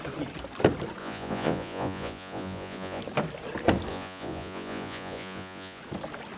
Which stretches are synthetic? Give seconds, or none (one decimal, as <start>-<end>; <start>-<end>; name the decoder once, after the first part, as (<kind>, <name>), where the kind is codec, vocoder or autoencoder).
1.0-3.0 (vocoder, Vocos); 3.9-5.8